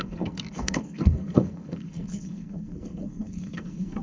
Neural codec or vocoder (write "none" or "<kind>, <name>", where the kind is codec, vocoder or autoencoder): codec, SNAC